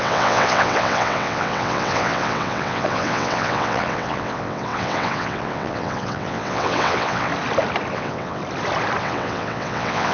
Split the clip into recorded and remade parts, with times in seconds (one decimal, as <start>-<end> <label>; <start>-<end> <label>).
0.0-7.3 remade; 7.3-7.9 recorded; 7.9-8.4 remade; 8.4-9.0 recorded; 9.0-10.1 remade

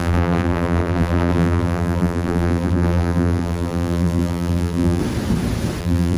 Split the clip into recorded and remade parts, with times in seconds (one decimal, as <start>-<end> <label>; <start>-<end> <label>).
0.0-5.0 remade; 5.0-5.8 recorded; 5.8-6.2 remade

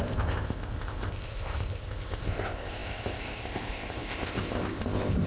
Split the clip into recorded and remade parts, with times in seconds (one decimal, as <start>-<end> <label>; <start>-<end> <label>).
0.0-5.3 remade

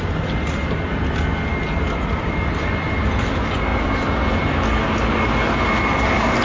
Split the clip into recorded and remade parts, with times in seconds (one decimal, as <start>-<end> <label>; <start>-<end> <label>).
0.0-6.4 recorded

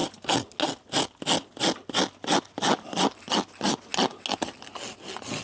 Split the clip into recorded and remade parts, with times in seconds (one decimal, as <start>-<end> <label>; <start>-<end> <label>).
0.0-5.4 recorded